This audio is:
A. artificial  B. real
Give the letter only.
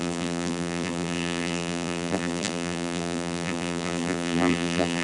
A